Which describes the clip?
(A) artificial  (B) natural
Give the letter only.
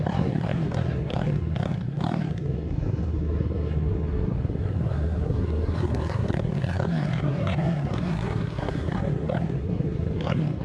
A